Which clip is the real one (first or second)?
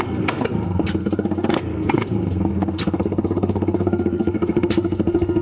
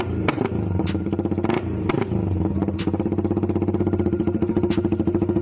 second